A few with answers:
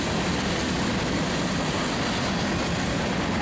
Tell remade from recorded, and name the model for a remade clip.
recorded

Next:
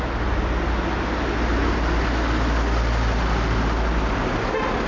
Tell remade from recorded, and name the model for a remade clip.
recorded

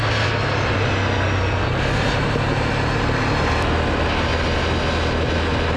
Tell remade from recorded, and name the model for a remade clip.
recorded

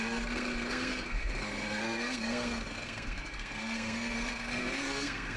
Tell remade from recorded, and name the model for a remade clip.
remade, codec, SNAC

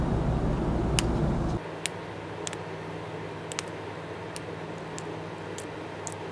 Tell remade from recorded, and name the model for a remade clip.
recorded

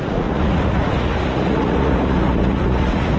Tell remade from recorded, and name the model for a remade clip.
remade, vocoder, Vocos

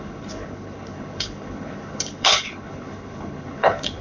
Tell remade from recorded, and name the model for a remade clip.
remade, codec, HILCodec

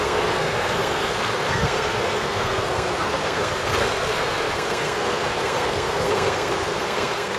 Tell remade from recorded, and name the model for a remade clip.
remade, codec, SNAC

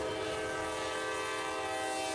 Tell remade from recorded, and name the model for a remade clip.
recorded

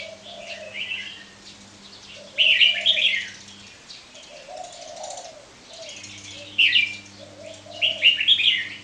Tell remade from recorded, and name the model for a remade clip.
recorded